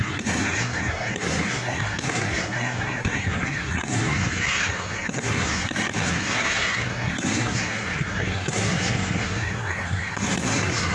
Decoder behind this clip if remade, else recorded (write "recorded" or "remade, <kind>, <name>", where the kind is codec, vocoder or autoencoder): remade, codec, SNAC